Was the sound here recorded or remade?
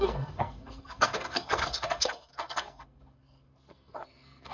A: remade